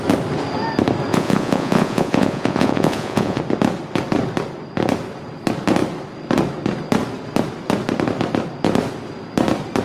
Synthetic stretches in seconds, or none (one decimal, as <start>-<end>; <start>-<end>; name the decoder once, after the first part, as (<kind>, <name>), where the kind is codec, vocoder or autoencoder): 1.1-3.4 (vocoder, Vocos)